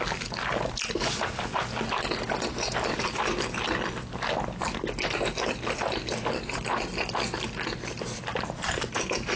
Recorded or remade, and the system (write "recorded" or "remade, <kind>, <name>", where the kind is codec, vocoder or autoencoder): recorded